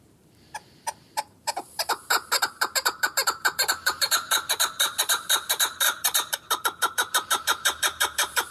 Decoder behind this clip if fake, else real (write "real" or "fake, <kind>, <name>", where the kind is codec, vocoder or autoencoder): fake, vocoder, BigVGAN v2